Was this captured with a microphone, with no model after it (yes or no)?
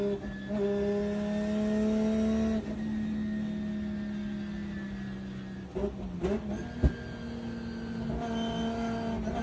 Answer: yes